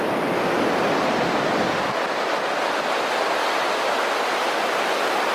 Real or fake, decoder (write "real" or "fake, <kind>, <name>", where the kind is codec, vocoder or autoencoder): real